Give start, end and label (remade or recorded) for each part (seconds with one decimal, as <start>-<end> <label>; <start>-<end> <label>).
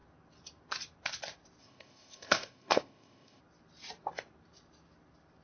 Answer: 0.0-1.6 recorded; 1.6-3.4 remade; 3.4-5.4 recorded